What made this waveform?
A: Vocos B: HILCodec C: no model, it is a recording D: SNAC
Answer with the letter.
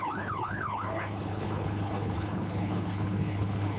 B